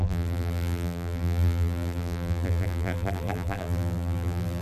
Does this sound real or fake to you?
fake